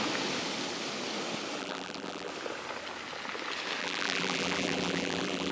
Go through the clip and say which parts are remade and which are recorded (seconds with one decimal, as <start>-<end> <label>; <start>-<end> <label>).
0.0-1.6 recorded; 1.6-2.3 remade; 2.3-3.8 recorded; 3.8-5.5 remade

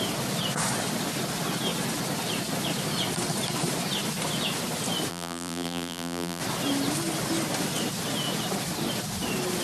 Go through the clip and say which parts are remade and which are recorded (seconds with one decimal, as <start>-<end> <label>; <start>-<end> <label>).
0.0-5.1 recorded; 5.1-6.4 remade; 6.4-9.6 recorded

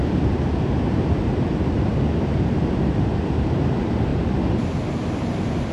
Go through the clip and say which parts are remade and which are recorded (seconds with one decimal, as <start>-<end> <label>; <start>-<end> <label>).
0.0-5.7 recorded

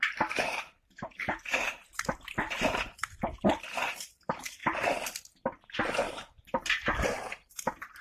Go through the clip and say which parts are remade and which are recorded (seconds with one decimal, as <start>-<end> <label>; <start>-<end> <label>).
0.0-4.6 remade; 4.6-6.0 recorded; 6.0-8.0 remade

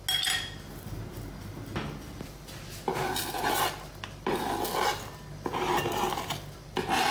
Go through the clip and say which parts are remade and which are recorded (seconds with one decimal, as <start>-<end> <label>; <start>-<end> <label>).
0.0-7.1 recorded